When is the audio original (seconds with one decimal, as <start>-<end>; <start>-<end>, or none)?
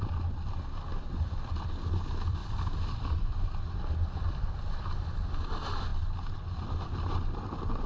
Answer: 0.0-2.4; 5.4-7.9